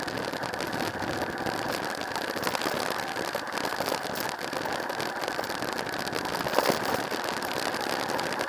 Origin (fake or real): real